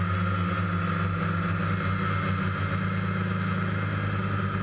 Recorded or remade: recorded